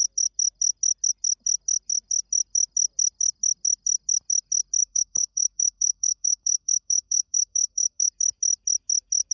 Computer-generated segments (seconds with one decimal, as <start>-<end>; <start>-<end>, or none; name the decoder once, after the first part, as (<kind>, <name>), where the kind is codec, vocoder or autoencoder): 4.8-8.1 (codec, DAC)